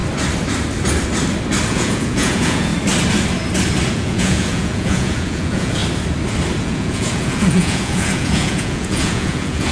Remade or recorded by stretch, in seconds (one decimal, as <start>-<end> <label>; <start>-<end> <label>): 0.0-1.7 recorded; 1.7-2.7 remade; 2.7-3.9 recorded; 3.9-5.8 remade; 5.8-6.6 recorded; 6.6-9.7 remade